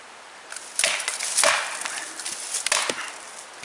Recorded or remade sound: recorded